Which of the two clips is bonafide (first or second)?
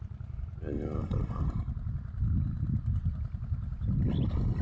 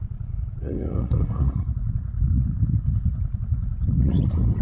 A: first